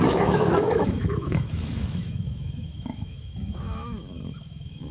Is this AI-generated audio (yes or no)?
yes